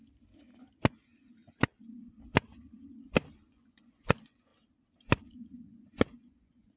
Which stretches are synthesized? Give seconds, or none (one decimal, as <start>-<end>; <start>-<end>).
3.5-4.5; 5.2-6.8